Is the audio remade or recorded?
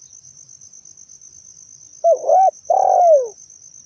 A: recorded